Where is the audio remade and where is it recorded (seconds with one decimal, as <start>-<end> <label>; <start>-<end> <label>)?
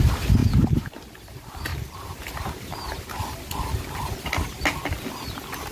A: 0.0-0.4 recorded; 0.4-1.0 remade; 1.0-1.7 recorded; 1.7-2.9 remade; 2.9-5.7 recorded